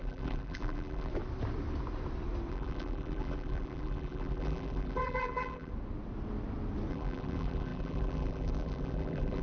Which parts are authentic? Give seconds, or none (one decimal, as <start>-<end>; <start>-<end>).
1.1-2.5; 5.7-6.9

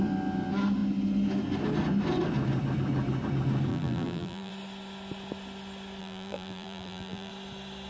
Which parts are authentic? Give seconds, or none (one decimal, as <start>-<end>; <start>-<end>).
0.0-3.7; 4.5-6.0; 7.3-7.9

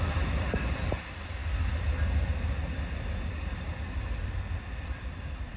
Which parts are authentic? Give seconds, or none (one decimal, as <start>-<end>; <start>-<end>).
1.4-4.8

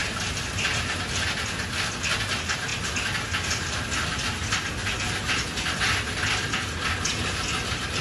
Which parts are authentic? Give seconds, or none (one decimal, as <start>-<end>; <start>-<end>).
0.0-8.0

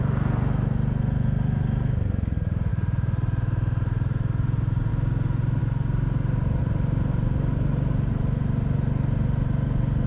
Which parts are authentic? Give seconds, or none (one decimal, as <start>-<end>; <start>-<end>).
0.0-2.7; 4.9-10.1

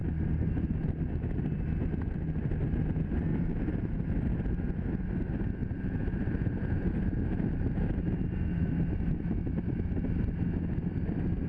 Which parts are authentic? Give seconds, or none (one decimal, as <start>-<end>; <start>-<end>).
0.0-3.3; 3.9-5.6; 8.7-11.5